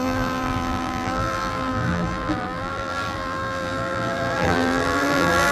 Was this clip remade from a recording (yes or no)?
yes